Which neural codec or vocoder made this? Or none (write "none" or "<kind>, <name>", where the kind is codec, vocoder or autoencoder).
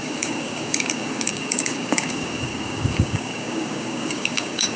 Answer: codec, DAC